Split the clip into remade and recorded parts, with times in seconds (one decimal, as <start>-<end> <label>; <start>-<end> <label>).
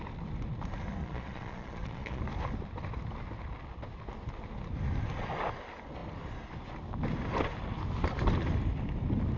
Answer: 0.0-1.0 recorded; 1.0-2.2 remade; 2.2-9.4 recorded